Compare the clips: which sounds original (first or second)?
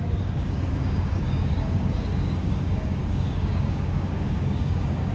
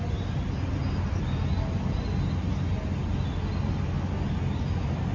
second